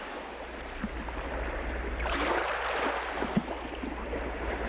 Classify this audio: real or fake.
real